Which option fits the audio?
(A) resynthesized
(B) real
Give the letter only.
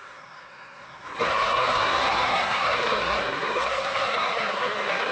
A